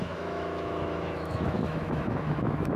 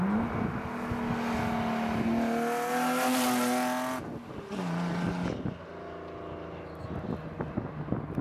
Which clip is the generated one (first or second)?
first